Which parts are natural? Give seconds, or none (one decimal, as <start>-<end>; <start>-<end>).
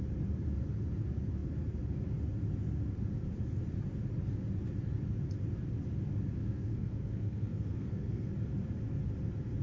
0.0-6.4; 8.3-9.6